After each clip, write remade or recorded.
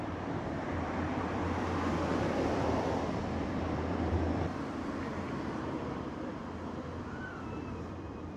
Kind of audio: remade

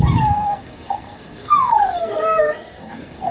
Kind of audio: remade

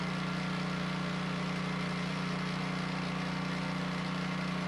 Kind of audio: recorded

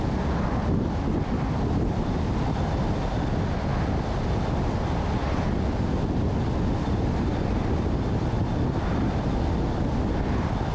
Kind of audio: recorded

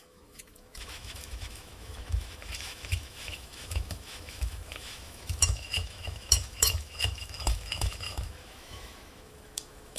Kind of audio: remade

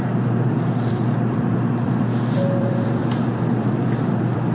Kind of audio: remade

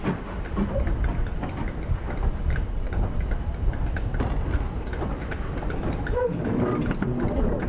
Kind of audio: recorded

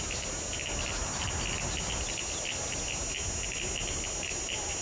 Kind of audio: recorded